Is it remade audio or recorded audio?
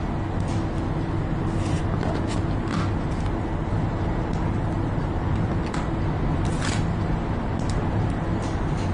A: recorded